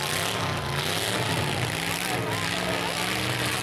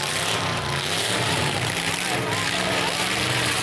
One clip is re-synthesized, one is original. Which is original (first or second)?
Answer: first